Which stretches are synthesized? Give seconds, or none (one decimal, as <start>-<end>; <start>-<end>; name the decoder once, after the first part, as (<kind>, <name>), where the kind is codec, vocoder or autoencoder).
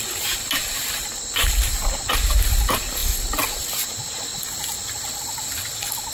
none